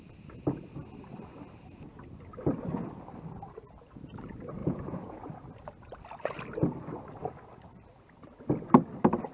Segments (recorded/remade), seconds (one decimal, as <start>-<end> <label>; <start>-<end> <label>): 0.0-4.6 recorded; 4.6-5.3 remade; 5.3-9.3 recorded